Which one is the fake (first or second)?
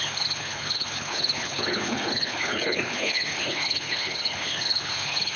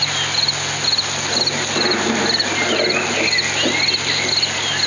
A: first